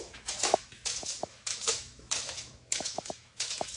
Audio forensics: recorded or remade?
remade